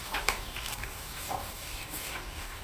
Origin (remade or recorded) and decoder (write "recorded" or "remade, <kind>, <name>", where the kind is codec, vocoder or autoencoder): remade, codec, DAC